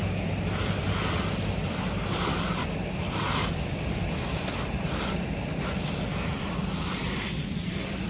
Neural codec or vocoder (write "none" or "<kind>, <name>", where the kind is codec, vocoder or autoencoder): vocoder, BigVGAN v2